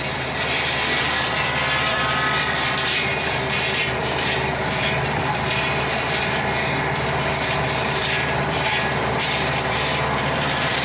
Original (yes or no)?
no